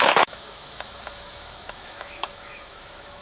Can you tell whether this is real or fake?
fake